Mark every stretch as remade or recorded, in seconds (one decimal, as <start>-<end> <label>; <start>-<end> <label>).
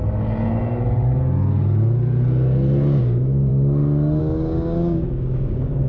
0.0-3.0 recorded; 3.0-3.5 remade; 3.5-4.2 recorded; 4.2-5.9 remade